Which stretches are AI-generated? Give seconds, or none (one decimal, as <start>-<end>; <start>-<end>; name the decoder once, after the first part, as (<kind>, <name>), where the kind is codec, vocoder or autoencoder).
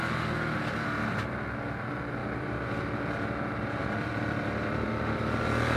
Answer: 2.2-5.8 (vocoder, BigVGAN v2)